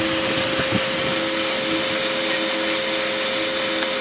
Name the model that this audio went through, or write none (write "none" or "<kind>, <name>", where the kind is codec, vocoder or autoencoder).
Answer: none